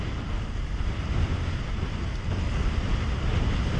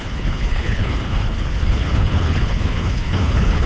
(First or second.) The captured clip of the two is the first